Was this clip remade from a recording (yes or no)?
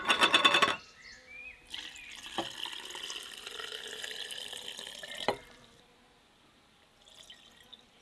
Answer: no